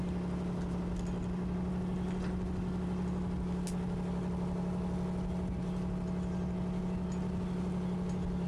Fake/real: real